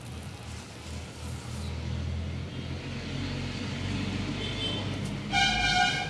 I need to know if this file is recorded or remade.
recorded